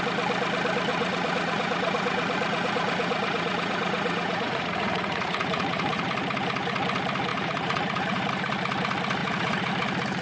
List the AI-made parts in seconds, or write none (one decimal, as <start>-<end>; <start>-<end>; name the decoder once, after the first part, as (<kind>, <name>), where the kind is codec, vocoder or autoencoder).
0.9-6.1 (vocoder, Vocos); 7.3-8.3; 9.2-9.7

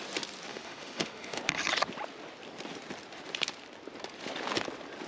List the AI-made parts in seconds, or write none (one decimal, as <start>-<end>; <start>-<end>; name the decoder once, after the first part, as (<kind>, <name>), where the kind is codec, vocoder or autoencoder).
0.5-1.4 (autoencoder, DAC-VAE)

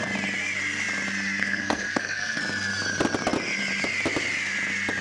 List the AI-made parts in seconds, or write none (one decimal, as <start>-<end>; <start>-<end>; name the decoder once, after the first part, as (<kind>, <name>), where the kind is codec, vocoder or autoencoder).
1.4-2.4 (codec, SNAC)

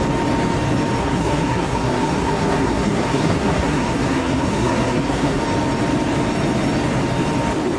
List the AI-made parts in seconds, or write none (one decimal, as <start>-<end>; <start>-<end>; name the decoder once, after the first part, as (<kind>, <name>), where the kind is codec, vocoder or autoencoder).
1.0-5.4 (codec, SNAC)

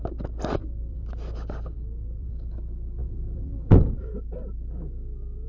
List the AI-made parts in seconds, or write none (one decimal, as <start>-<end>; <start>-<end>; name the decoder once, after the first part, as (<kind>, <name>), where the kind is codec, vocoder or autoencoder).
0.6-2.3 (vocoder, BigVGAN v2); 3.0-3.7

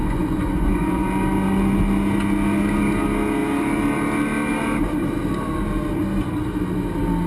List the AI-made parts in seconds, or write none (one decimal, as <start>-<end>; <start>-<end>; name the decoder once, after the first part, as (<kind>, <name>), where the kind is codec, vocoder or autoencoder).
0.0-1.1 (vocoder, Vocos)

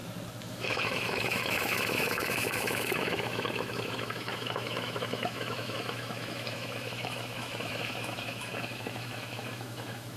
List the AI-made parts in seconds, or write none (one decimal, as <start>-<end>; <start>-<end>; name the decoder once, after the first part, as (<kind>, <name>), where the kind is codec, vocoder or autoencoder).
0.5-10.2 (autoencoder, DAC-VAE)

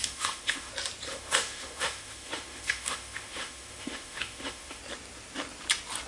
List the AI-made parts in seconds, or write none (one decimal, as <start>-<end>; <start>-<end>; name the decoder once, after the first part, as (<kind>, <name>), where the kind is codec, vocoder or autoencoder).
0.0-0.7 (autoencoder, DAC-VAE); 1.1-4.8